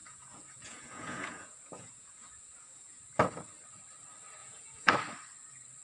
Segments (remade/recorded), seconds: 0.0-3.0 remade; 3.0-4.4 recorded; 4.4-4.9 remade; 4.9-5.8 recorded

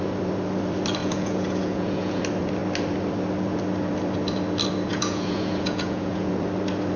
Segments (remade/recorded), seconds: 0.0-1.0 recorded; 1.0-2.2 remade; 2.2-4.9 recorded; 4.9-6.3 remade; 6.3-7.0 recorded

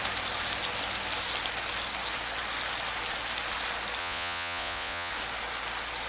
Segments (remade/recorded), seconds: 0.0-4.0 recorded; 4.0-5.1 remade; 5.1-6.1 recorded

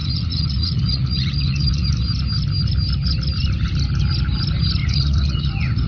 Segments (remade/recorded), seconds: 0.0-1.9 remade; 1.9-4.8 recorded; 4.8-5.9 remade

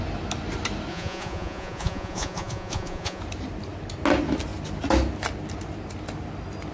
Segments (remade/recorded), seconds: 0.0-0.9 recorded; 0.9-3.2 remade; 3.2-6.7 recorded